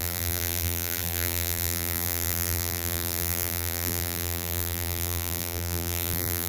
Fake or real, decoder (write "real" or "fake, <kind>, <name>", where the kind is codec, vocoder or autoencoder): fake, vocoder, BigVGAN v2